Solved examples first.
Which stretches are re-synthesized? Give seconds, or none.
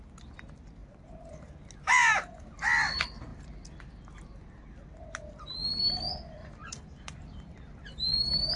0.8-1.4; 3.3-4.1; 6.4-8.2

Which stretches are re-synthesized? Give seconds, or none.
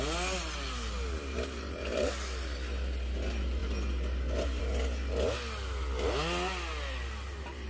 none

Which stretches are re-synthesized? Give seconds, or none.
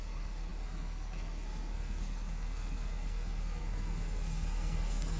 0.0-5.2